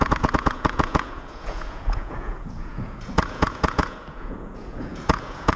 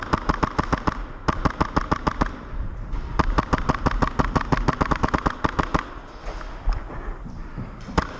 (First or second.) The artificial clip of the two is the first